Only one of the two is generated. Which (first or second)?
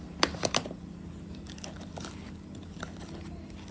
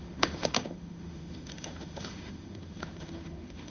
second